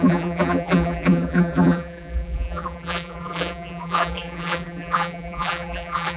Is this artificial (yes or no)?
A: yes